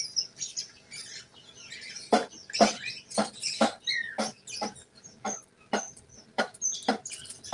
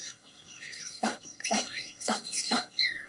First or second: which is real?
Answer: first